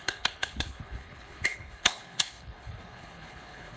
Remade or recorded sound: remade